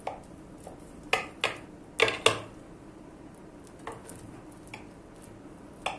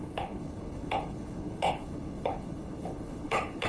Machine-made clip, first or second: second